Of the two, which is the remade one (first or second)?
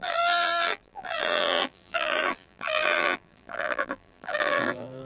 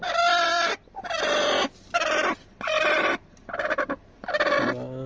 first